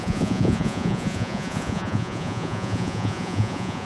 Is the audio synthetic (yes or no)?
yes